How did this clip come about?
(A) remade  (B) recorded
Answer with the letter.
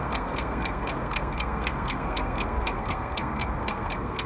A